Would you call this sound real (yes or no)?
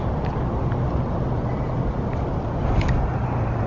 yes